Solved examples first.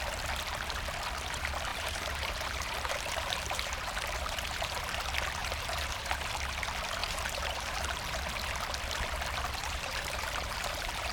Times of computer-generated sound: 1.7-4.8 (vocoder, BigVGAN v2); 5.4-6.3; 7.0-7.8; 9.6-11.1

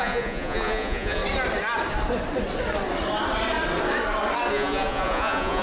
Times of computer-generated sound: 0.0-1.2 (vocoder, Vocos); 4.5-5.6

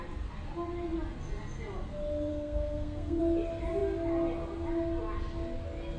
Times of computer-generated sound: 2.3-3.2 (codec, SNAC)

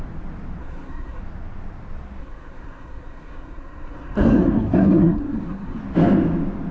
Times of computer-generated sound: 0.6-1.2 (codec, SNAC); 2.2-5.8

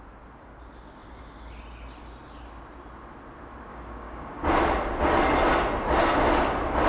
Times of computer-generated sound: 3.7-4.5 (codec, DAC)

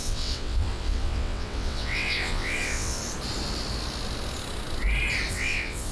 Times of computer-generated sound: 0.0-3.0 (vocoder, WaveNeXt); 5.3-5.9

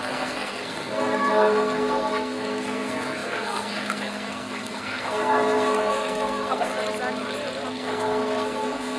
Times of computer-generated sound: 0.0-6.7 (codec, SNAC); 7.7-9.0

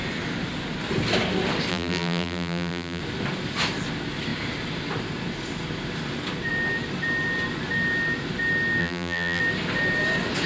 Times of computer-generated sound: 1.7-3.0 (vocoder, BigVGAN v2); 8.8-9.4